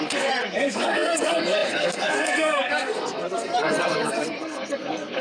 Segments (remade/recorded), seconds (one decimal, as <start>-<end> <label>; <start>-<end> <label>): 0.0-5.2 remade